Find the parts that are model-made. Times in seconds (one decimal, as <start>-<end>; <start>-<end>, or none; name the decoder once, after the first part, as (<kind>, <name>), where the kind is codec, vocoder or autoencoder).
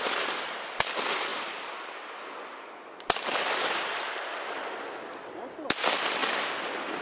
none